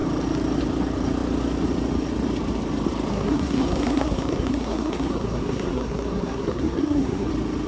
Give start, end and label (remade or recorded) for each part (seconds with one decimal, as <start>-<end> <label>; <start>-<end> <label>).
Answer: 0.0-3.1 recorded; 3.1-7.3 remade; 7.3-7.7 recorded